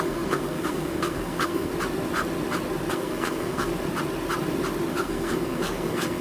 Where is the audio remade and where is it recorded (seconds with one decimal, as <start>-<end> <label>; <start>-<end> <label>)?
0.0-1.7 remade; 1.7-2.9 recorded; 2.9-3.7 remade; 3.7-4.9 recorded; 4.9-6.2 remade